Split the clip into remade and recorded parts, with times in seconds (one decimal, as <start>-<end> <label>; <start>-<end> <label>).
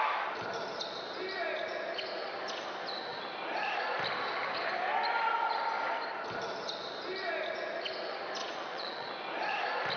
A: 0.0-8.4 recorded; 8.4-9.1 remade; 9.1-10.0 recorded